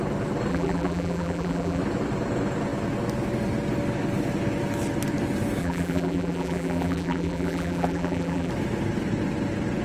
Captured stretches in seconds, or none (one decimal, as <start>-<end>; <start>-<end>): 0.0-0.5; 1.8-5.6; 8.5-9.8